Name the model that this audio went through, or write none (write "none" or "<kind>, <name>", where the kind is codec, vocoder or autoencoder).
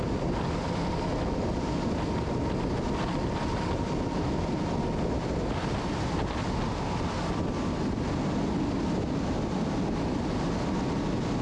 none